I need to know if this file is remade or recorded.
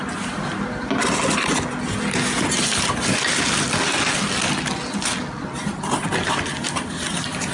recorded